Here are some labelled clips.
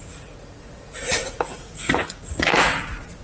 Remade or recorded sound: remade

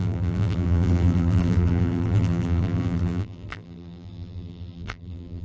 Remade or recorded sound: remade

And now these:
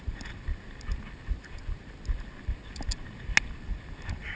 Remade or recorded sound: recorded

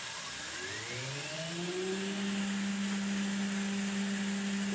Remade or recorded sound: recorded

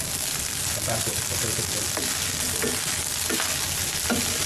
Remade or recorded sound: recorded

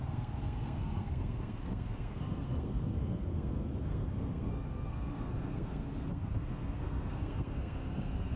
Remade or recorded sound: remade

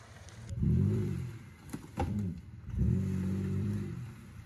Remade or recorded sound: remade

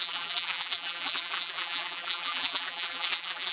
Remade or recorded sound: remade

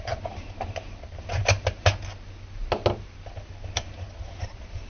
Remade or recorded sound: recorded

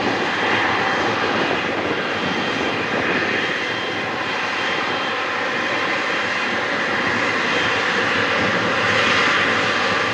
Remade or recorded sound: recorded